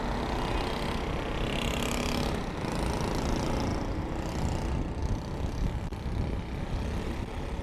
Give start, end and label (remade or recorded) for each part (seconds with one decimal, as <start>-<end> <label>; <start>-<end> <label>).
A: 0.0-7.6 recorded